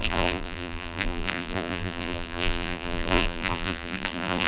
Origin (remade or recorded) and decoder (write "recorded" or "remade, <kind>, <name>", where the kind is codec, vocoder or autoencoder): remade, vocoder, BigVGAN v2